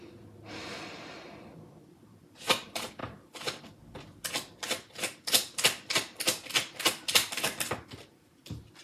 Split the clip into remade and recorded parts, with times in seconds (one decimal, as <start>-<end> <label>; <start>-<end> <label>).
0.0-8.8 recorded